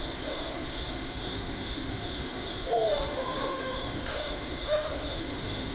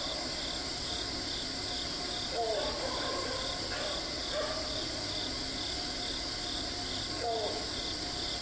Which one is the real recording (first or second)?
second